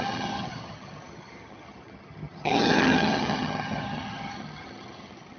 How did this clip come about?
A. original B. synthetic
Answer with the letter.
B